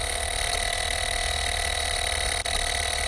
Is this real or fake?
real